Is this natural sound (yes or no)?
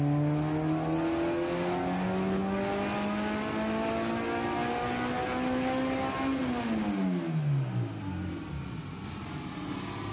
yes